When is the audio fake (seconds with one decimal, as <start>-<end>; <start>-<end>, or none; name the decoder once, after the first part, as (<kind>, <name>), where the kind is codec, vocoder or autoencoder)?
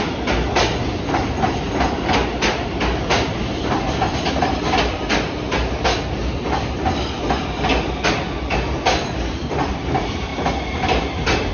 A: none